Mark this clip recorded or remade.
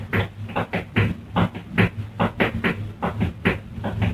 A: recorded